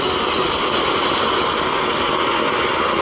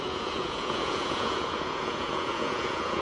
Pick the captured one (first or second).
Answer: first